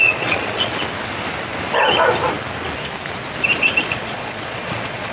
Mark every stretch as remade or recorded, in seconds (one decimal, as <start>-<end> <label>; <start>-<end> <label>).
0.0-0.7 remade; 0.7-3.8 recorded; 3.8-5.1 remade